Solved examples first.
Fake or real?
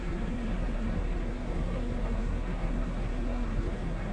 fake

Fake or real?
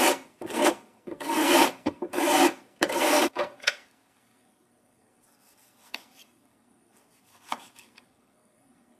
fake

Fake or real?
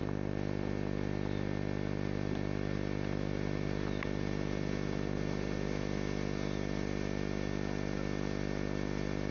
real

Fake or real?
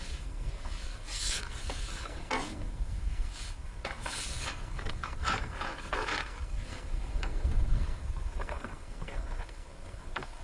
fake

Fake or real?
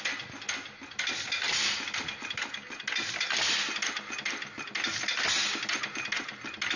real